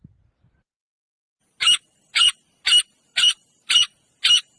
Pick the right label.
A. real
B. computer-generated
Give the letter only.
A